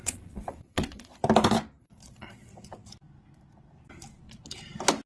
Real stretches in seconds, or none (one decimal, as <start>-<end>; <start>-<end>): 1.2-1.8; 2.5-5.1